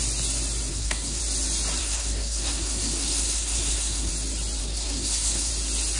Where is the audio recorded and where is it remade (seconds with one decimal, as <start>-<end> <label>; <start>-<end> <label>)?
0.0-0.7 recorded; 0.7-1.2 remade; 1.2-1.8 recorded; 1.8-4.1 remade; 4.1-4.6 recorded; 4.6-5.5 remade; 5.5-6.0 recorded